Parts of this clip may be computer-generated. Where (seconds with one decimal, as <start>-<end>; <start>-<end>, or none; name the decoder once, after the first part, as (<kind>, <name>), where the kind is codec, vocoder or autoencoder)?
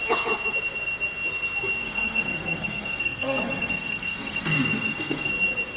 1.8-5.3 (codec, SNAC)